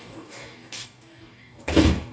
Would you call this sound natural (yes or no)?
no